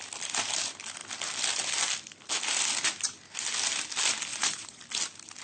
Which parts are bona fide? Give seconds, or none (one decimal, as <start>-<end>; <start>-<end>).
0.0-4.3; 4.8-5.4